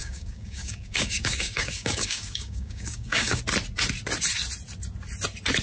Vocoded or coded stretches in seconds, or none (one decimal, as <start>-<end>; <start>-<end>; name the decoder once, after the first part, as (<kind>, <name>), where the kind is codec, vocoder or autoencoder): 0.0-3.4 (codec, DAC)